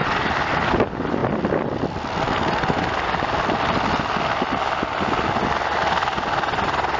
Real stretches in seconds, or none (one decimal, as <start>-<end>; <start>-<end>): 0.0-7.0

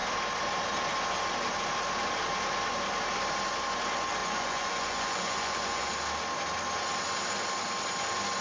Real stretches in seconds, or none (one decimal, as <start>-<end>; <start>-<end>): 0.0-4.2; 5.9-8.4

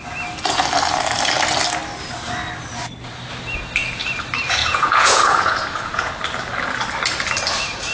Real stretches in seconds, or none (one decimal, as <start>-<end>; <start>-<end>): 0.0-4.6; 6.1-7.9

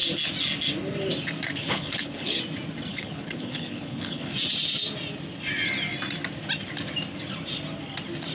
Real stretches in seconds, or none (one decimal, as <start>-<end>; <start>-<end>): 0.0-1.6; 2.4-2.9; 4.3-8.3

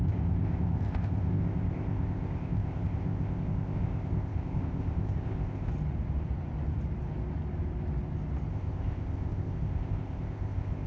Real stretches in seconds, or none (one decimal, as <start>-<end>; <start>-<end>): 5.7-8.5

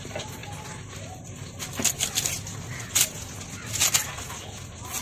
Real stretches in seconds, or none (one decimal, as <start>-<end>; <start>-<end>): 0.0-5.0